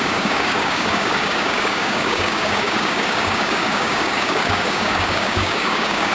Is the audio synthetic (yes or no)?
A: yes